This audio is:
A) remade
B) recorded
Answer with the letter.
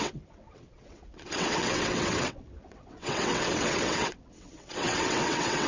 A